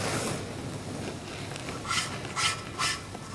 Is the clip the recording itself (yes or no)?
yes